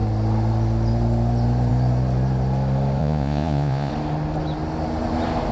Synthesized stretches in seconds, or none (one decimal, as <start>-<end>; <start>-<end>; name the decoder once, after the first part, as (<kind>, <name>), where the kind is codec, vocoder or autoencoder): 3.0-3.9 (vocoder, Vocos)